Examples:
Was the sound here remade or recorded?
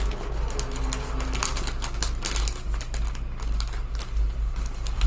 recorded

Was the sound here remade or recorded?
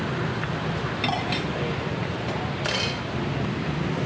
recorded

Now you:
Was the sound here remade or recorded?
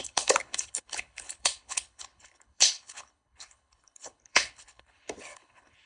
remade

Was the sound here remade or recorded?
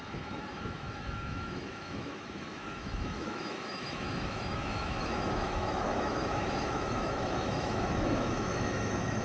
remade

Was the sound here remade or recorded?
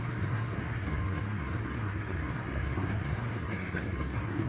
remade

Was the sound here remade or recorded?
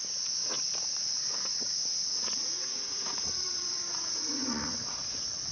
remade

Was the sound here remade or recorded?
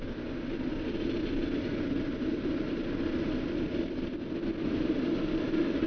recorded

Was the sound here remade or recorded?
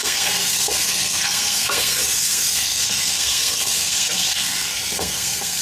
remade